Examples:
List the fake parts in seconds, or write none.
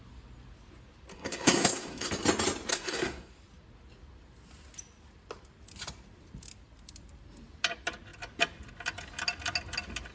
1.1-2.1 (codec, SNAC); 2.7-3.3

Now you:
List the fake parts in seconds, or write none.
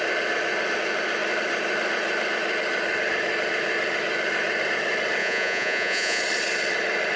5.2-6.2 (vocoder, Vocos)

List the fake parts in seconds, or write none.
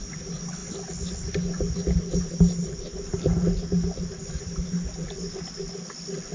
none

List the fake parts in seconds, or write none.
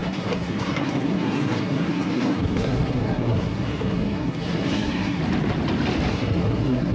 0.0-5.2 (codec, SNAC); 6.1-6.9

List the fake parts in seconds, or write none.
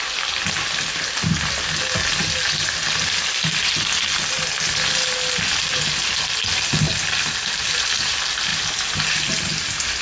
none